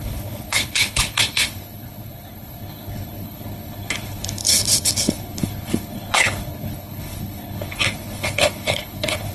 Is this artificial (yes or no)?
yes